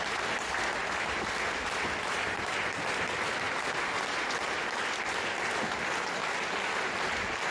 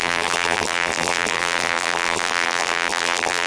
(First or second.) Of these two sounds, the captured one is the first